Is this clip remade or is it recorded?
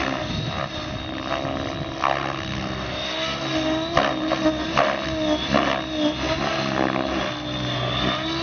recorded